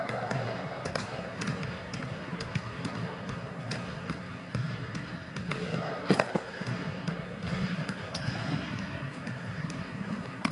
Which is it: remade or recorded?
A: remade